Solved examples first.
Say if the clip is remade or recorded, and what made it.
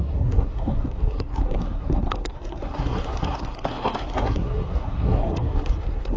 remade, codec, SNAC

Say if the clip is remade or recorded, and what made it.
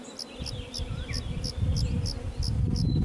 recorded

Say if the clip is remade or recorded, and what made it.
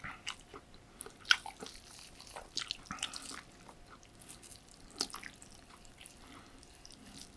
recorded